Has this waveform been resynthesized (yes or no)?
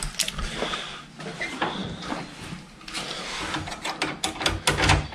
no